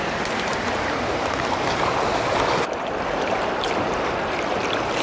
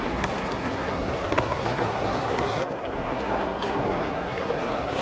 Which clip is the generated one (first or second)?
second